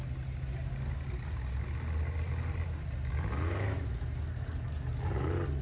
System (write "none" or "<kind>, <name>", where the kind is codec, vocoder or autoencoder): none